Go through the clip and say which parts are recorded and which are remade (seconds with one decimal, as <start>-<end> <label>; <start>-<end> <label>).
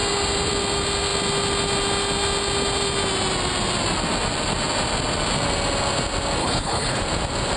0.0-6.4 recorded; 6.4-7.0 remade; 7.0-7.6 recorded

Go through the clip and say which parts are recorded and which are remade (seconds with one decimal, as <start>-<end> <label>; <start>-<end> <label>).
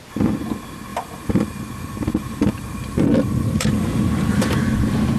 0.0-0.9 recorded; 0.9-4.0 remade; 4.0-5.2 recorded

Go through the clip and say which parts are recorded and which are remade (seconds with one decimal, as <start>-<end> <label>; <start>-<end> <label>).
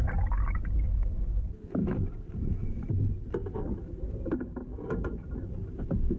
0.0-6.2 recorded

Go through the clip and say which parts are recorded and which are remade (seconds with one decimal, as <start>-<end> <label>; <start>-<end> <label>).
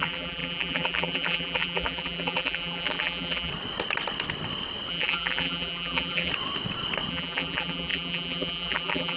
0.0-3.5 remade; 3.5-4.9 recorded; 4.9-6.3 remade; 6.3-7.1 recorded; 7.1-9.2 remade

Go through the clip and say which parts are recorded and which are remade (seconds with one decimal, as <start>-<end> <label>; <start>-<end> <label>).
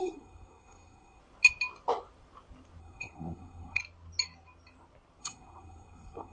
0.0-1.2 remade; 1.2-2.8 recorded; 2.8-3.8 remade; 3.8-5.2 recorded; 5.2-6.3 remade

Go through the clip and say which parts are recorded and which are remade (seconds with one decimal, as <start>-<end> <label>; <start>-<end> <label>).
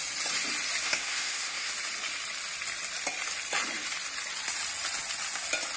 0.0-0.8 recorded; 0.8-1.7 remade; 1.7-5.8 recorded